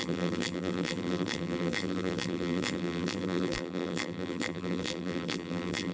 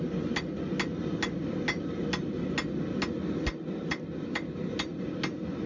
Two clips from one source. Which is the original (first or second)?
second